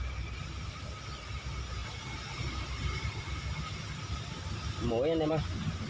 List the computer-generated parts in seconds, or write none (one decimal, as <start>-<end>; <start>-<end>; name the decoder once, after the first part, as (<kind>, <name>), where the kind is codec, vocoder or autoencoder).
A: none